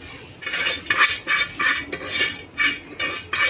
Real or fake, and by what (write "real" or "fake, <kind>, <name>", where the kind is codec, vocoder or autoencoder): real